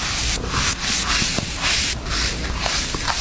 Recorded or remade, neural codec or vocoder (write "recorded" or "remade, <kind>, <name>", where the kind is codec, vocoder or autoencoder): recorded